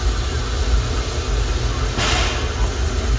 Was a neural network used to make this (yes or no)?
no